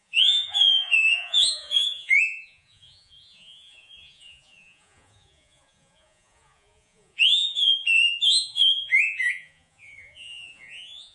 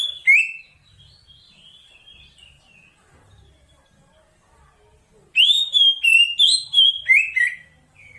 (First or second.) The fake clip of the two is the first